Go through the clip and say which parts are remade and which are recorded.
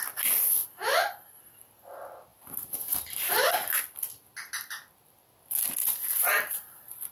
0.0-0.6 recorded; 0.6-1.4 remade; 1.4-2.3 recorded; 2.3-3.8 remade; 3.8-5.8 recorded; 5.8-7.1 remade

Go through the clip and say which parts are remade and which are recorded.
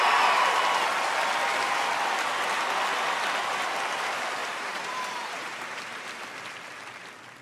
0.0-4.4 recorded; 4.4-6.3 remade; 6.3-7.4 recorded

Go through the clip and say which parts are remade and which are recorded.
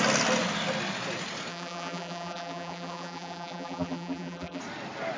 0.0-1.5 recorded; 1.5-4.6 remade; 4.6-5.2 recorded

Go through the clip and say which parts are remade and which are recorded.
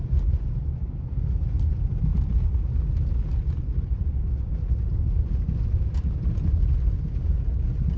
0.0-3.3 recorded; 3.3-6.3 remade; 6.3-8.0 recorded